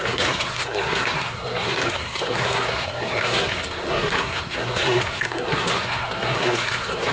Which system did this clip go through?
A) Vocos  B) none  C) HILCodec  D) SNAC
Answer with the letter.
D